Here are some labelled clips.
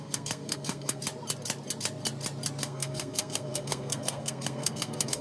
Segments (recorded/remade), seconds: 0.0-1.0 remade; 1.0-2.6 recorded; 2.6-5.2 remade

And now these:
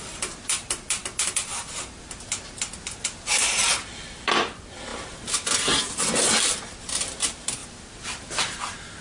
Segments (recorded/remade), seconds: 0.0-9.0 recorded

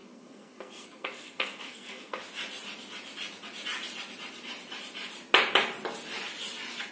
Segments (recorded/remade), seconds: 0.0-2.2 remade; 2.2-6.9 recorded

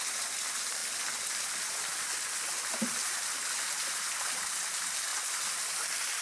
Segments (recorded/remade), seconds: 0.0-6.2 recorded